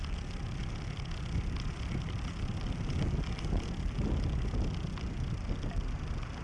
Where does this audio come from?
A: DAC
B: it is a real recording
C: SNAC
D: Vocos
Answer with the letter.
B